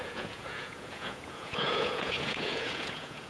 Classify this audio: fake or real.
fake